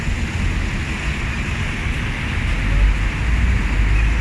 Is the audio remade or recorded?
recorded